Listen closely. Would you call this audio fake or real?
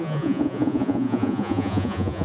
fake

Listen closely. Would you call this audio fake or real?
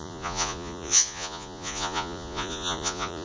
fake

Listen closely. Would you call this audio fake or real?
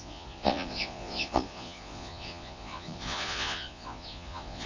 fake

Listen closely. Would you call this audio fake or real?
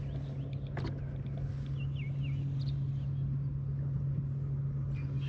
real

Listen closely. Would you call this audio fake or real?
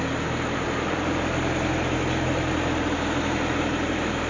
real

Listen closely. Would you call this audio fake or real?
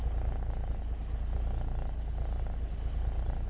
real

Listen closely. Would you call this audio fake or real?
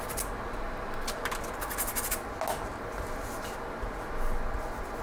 real